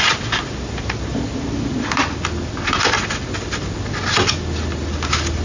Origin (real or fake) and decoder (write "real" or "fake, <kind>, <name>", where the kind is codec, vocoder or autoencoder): real